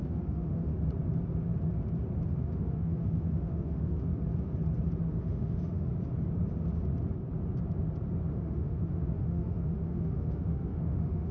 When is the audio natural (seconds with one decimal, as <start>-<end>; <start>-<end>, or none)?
0.7-2.4; 4.1-5.0; 5.9-8.3